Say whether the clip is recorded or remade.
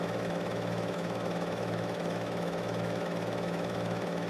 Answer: remade